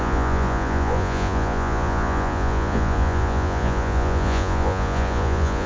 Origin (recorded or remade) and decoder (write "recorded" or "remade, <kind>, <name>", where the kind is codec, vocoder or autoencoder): remade, vocoder, Vocos